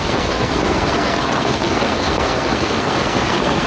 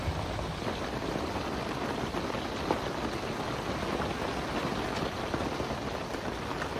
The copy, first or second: first